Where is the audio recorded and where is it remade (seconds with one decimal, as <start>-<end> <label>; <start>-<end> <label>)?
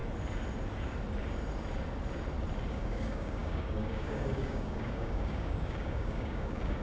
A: 0.0-2.7 recorded; 2.7-6.8 remade